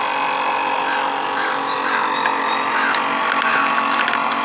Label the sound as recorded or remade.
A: recorded